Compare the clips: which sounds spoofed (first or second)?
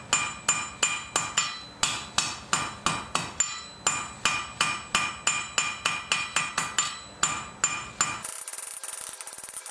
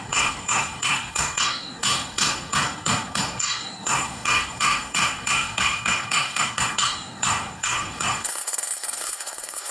second